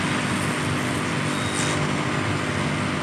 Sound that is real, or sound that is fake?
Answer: real